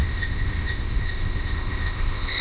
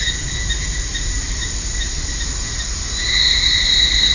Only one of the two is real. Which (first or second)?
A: second